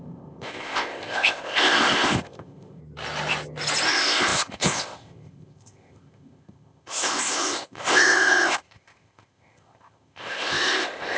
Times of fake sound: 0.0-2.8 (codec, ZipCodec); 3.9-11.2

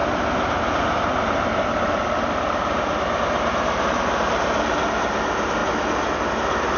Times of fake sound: none